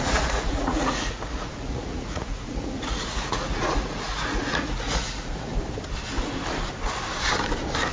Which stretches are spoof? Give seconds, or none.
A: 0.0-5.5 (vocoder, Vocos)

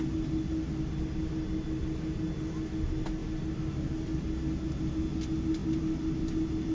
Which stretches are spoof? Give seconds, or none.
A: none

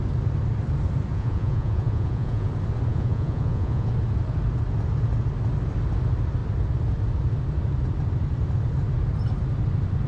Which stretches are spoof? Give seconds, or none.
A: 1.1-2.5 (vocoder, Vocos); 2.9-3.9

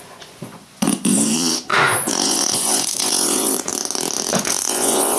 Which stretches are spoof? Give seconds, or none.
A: 0.0-3.7 (vocoder, Vocos); 4.3-5.2

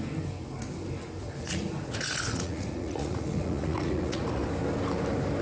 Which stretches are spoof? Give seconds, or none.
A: 1.2-4.4 (vocoder, Vocos)

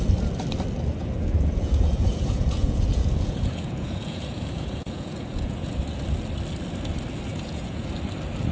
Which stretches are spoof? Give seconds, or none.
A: 1.0-5.7 (vocoder, Vocos); 7.3-7.9